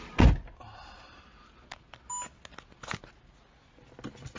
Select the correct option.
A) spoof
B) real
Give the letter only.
B